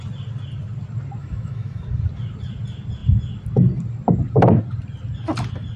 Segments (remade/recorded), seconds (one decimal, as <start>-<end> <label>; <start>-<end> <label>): 0.0-1.2 recorded; 1.2-1.8 remade; 1.8-5.8 recorded